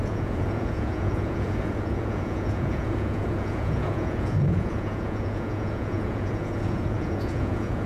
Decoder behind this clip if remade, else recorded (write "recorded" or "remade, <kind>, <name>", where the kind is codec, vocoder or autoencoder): remade, vocoder, Vocos